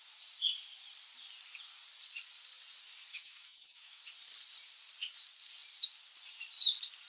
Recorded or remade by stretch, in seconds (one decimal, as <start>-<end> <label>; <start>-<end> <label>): 0.0-3.1 recorded; 3.1-4.0 remade; 4.0-7.1 recorded